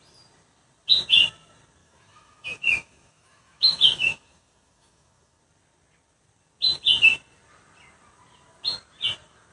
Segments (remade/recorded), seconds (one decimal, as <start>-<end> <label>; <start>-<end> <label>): 0.0-1.8 recorded; 1.8-5.4 remade; 5.4-9.5 recorded